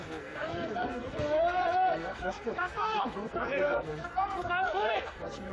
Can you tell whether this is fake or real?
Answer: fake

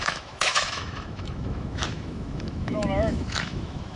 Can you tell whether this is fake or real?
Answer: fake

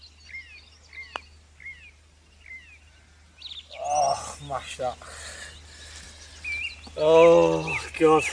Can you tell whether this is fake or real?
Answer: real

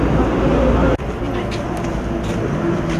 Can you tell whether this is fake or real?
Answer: real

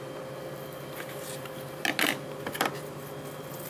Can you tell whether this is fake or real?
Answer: real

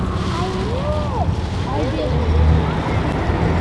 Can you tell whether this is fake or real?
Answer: real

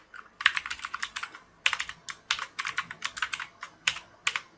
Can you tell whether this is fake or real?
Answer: real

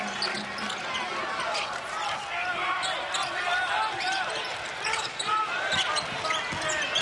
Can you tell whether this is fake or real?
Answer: real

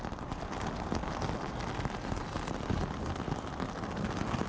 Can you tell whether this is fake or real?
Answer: real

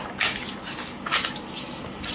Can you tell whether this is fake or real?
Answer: real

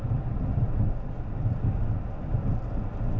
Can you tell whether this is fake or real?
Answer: real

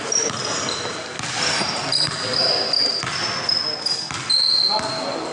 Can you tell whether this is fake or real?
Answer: real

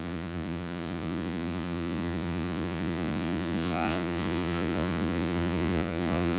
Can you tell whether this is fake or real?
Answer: fake